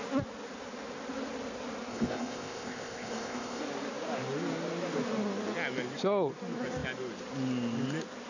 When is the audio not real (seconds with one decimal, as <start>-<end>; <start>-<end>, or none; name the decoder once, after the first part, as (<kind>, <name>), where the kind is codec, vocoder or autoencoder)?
1.9-3.6 (codec, ZipCodec)